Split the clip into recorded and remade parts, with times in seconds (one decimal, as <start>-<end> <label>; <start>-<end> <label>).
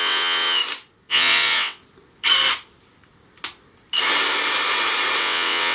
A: 0.0-0.6 remade; 0.6-1.1 recorded; 1.1-1.8 remade; 1.8-5.2 recorded; 5.2-5.7 remade